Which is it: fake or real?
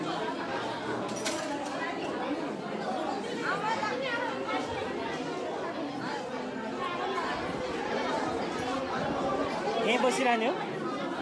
real